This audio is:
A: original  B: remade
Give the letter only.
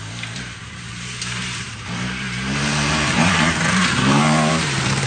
B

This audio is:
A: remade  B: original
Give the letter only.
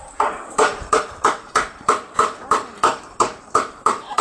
A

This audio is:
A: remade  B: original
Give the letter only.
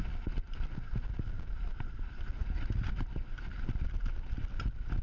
B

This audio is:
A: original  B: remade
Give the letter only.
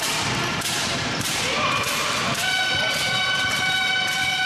B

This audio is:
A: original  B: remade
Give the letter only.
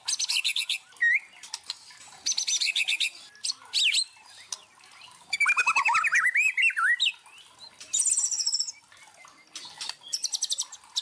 A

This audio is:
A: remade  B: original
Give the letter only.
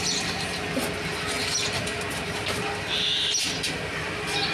B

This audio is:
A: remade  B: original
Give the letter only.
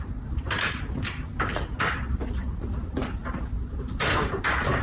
B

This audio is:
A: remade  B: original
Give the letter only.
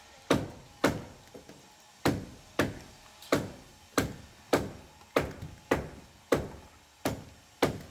B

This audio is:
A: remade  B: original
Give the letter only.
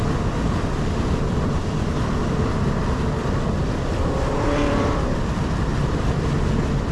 A